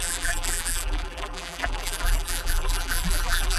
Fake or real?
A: fake